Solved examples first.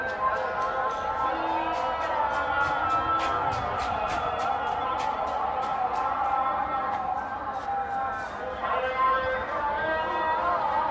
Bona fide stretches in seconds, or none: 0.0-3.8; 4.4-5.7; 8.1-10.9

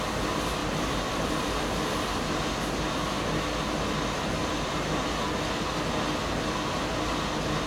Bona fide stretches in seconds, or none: 0.0-0.6; 1.5-7.7

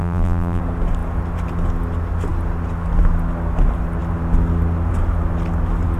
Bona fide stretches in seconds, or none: 0.6-6.0

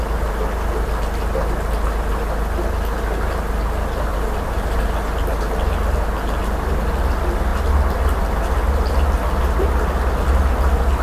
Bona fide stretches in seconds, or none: 0.0-4.1; 4.8-11.0

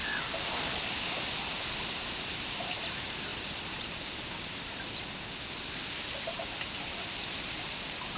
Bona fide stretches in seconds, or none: 1.2-3.3; 7.6-8.2

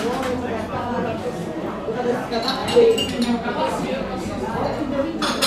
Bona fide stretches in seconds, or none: 0.0-1.4; 2.0-2.6; 4.5-5.5